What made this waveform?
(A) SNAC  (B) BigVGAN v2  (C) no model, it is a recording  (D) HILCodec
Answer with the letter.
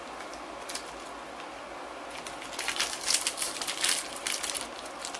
C